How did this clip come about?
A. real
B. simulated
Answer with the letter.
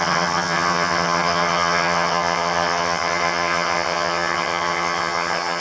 B